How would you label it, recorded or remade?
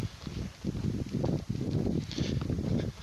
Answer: recorded